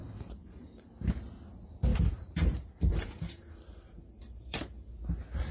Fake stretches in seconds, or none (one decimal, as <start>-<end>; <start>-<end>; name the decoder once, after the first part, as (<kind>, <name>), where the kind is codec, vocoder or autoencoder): 0.0-1.1 (vocoder, BigVGAN v2); 1.9-5.0